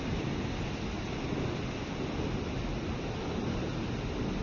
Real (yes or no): yes